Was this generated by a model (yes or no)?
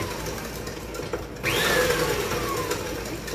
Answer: no